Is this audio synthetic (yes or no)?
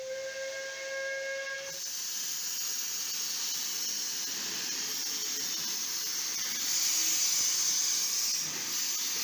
no